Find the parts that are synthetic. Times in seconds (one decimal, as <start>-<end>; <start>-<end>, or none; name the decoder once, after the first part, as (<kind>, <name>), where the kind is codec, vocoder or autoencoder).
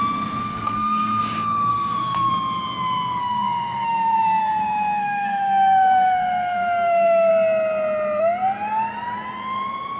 0.4-1.2 (codec, SNAC); 1.7-2.3; 3.2-7.3